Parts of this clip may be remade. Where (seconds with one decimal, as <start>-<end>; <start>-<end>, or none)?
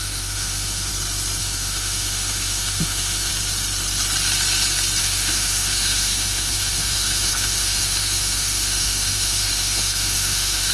0.0-0.9; 1.4-3.3; 5.0-10.7